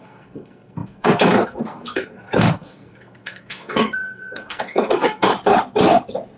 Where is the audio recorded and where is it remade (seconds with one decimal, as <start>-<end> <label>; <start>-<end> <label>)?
0.0-5.3 remade; 5.3-6.4 recorded